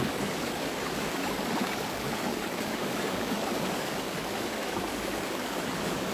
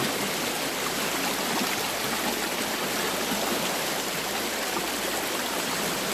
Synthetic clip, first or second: first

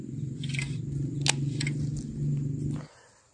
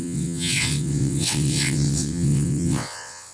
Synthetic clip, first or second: second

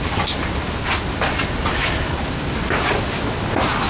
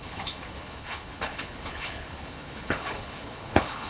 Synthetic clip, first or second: second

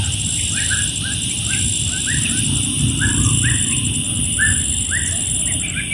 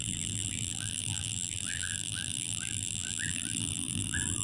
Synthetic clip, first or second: second